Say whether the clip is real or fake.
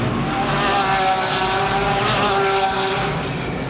real